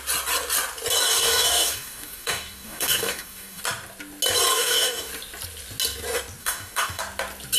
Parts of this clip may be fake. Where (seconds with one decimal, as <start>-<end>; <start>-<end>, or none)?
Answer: 1.1-3.6; 4.5-5.1; 6.4-7.0